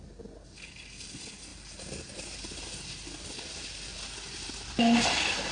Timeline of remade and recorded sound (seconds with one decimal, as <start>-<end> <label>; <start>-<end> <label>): 0.0-5.5 recorded